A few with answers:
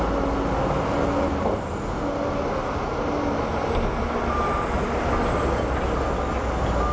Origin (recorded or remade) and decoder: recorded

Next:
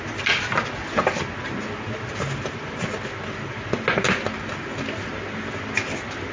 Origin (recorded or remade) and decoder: recorded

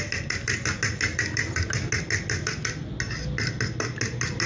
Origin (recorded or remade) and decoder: recorded